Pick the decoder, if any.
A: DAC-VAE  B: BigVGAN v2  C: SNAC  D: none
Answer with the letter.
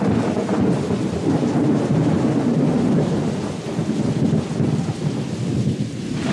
D